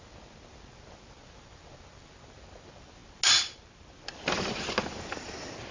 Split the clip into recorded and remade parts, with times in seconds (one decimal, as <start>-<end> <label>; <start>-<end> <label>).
0.0-5.7 recorded